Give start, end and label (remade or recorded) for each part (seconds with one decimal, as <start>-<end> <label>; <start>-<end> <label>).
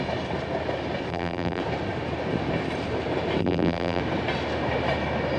0.0-1.1 recorded; 1.1-1.6 remade; 1.6-3.4 recorded; 3.4-4.0 remade; 4.0-5.4 recorded